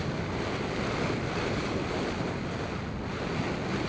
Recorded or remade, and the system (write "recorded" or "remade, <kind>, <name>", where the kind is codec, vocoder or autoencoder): recorded